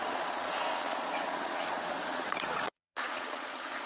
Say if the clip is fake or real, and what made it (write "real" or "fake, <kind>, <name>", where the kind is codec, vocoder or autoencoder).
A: fake, vocoder, Vocos